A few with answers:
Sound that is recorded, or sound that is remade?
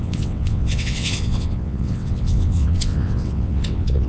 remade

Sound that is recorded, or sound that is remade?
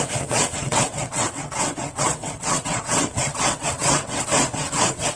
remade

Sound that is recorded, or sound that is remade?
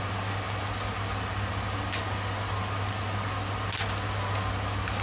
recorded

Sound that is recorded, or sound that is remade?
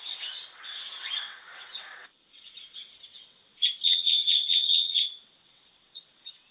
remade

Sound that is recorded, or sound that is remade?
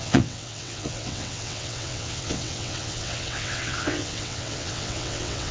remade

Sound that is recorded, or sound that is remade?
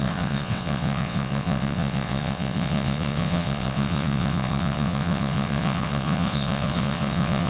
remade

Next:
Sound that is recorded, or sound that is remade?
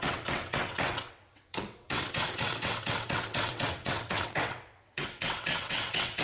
remade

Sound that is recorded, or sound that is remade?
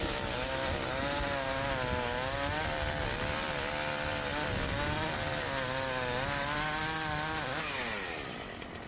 recorded